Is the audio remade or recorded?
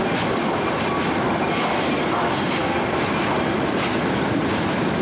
remade